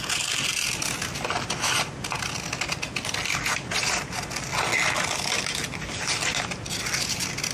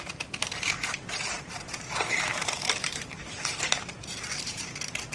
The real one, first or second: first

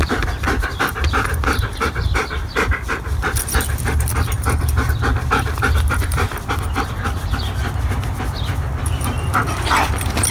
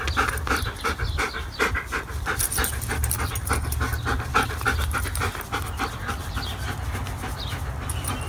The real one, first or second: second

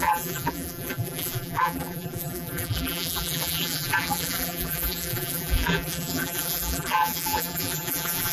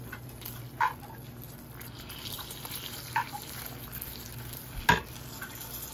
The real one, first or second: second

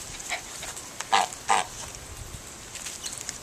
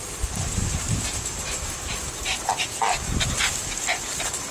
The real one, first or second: first